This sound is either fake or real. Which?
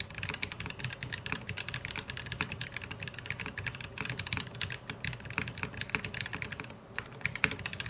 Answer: real